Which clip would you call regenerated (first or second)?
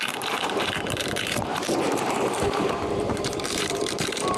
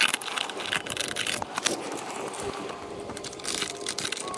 first